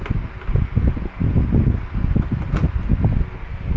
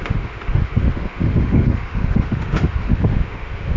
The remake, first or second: second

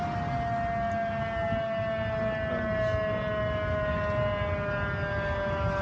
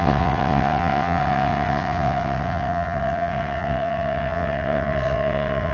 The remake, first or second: second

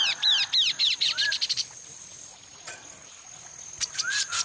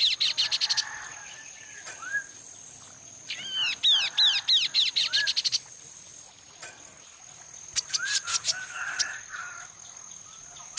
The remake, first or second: first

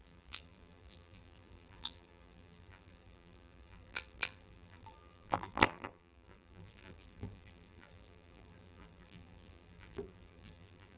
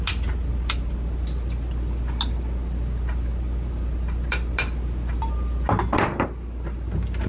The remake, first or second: first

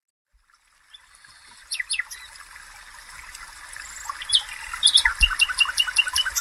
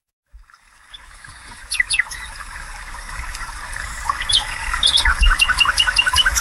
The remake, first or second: second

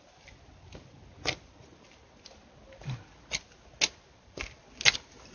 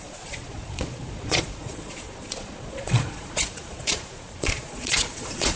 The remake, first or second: second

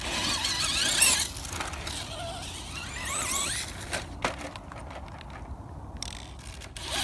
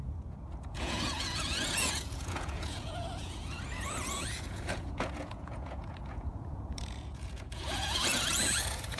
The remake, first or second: second